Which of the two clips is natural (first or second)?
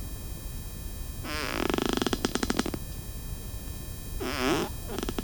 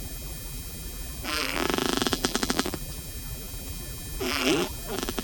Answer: first